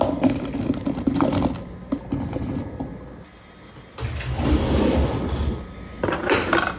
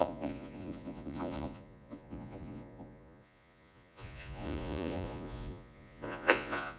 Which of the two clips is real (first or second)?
first